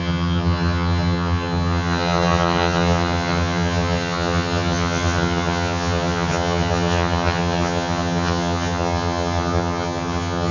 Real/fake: fake